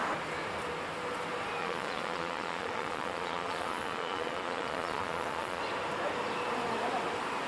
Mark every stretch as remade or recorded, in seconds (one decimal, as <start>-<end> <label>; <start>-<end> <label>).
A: 0.0-1.6 recorded; 1.6-5.6 remade; 5.6-7.5 recorded